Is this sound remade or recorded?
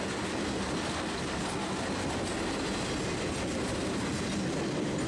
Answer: recorded